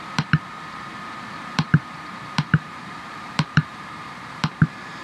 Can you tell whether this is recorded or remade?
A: remade